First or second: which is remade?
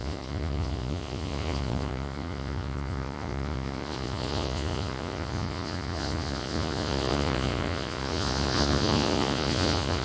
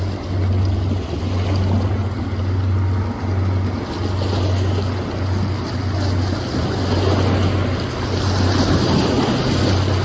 first